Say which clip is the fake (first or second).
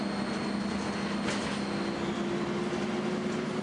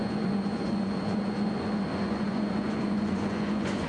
second